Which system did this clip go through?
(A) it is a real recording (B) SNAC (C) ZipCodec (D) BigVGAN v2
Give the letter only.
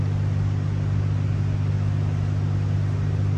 A